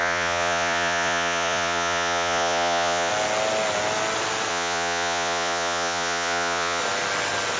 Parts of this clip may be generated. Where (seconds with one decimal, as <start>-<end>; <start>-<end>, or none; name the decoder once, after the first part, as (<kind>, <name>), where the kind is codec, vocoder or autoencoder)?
0.0-3.1 (vocoder, Vocos); 4.5-6.8